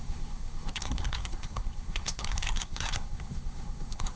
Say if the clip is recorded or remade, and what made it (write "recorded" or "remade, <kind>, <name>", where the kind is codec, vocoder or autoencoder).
remade, codec, SNAC